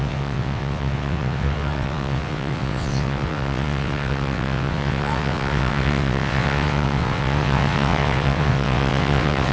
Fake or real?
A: fake